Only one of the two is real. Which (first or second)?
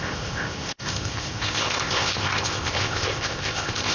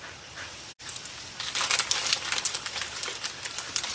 second